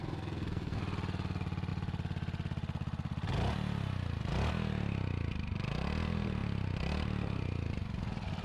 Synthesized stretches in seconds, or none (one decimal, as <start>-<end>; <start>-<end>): 0.0-0.8